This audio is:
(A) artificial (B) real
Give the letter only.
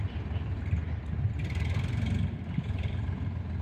A